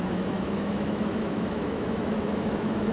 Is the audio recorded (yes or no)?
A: no